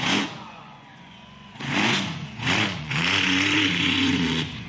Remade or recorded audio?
remade